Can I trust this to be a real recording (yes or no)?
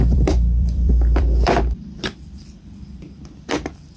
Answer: no